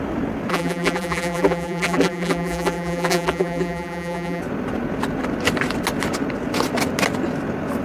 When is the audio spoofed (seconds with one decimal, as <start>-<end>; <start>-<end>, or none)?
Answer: 0.5-4.4